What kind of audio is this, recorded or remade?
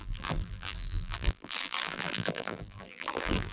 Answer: remade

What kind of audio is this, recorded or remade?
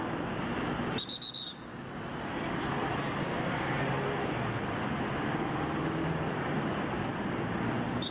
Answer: recorded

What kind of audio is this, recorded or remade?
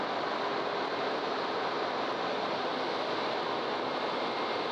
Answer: recorded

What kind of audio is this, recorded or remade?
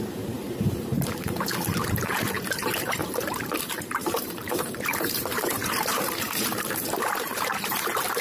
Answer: remade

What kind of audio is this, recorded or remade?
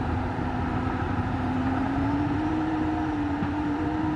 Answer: remade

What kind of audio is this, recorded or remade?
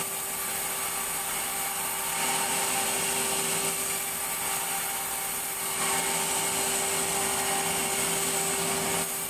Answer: recorded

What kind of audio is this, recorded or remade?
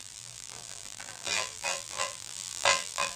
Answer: remade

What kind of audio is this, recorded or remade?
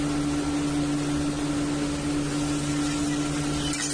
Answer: recorded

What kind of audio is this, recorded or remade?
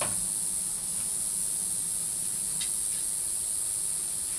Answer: recorded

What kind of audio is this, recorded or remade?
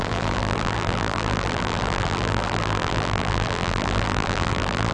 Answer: remade